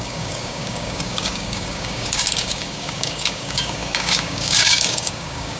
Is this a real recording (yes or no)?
no